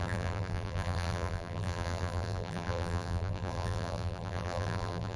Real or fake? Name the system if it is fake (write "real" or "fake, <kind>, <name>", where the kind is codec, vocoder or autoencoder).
fake, vocoder, BigVGAN v2